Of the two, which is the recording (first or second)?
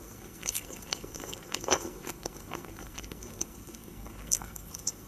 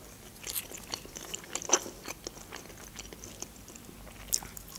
second